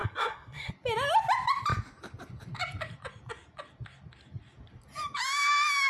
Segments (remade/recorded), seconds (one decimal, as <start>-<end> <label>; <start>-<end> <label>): 0.0-0.7 remade; 0.7-5.9 recorded